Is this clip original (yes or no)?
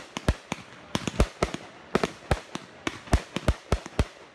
yes